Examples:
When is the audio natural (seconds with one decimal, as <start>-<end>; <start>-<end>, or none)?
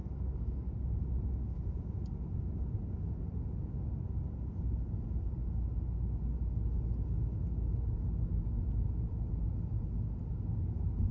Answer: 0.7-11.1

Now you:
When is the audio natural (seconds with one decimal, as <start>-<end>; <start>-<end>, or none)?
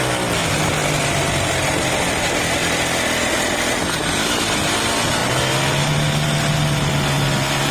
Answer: 0.0-0.4; 2.1-7.7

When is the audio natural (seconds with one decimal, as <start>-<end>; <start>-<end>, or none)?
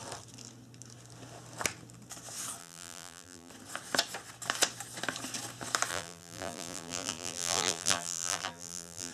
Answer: 0.0-2.6; 3.5-5.9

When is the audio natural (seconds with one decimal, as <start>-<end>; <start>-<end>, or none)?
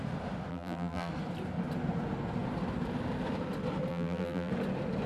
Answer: 0.0-0.5; 1.1-3.9; 4.5-5.1